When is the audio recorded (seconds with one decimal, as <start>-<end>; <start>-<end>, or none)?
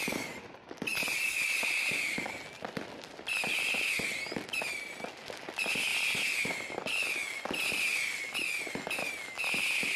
0.0-10.0